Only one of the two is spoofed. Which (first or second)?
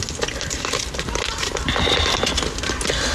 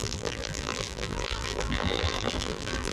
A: second